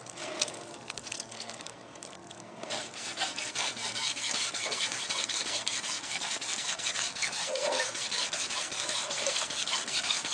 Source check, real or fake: fake